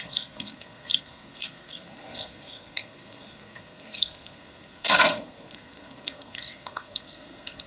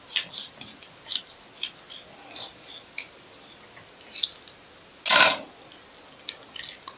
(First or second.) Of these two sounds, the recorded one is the second